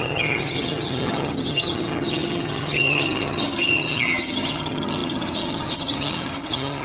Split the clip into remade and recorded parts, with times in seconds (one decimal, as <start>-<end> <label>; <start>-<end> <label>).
0.0-6.8 remade